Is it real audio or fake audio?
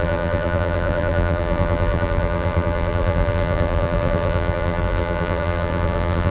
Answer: fake